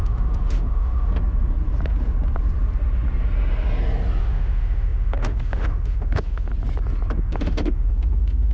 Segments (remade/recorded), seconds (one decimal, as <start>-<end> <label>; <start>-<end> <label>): 0.0-1.1 remade; 1.1-4.2 recorded; 4.2-6.5 remade; 6.5-7.2 recorded; 7.2-8.5 remade